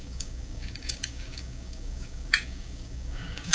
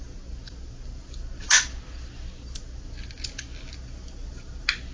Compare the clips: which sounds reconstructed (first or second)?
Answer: first